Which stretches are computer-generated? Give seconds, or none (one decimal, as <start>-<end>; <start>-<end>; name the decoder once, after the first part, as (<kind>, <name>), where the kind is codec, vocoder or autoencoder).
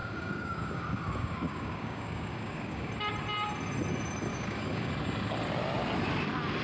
0.0-2.9 (codec, DAC); 4.3-4.9